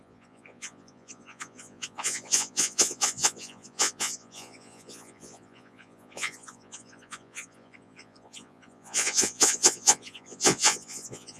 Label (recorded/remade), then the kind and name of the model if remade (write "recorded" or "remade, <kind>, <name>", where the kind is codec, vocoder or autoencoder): remade, vocoder, Vocos